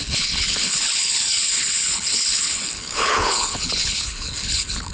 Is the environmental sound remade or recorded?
remade